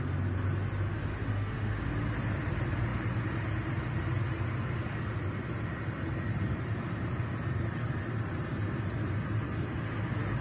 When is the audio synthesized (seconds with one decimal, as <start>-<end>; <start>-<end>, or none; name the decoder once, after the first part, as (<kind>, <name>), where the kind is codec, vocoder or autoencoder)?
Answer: 1.3-1.9 (autoencoder, DAC-VAE)